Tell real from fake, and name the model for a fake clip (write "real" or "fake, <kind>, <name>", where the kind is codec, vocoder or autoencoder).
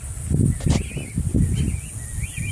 real